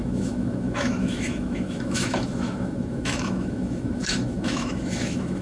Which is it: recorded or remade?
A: remade